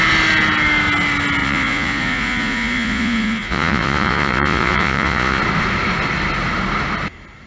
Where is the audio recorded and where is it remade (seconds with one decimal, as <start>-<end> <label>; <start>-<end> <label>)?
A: 0.0-1.4 recorded; 1.4-5.4 remade; 5.4-7.5 recorded